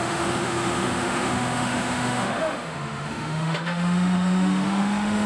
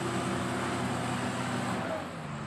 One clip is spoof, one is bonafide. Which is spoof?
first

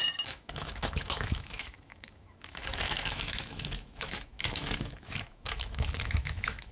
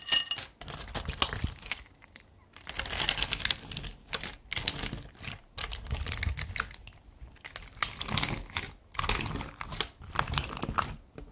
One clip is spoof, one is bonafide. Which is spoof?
first